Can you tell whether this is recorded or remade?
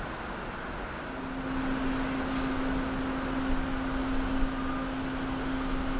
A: recorded